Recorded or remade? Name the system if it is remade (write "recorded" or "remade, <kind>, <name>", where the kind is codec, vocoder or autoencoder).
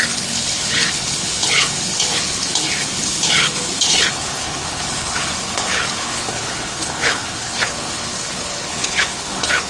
remade, codec, HILCodec